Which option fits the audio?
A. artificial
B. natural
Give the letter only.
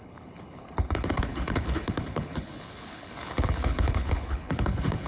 A